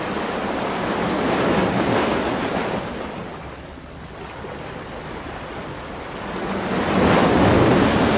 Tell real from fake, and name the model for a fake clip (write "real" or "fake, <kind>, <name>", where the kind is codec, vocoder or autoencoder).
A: real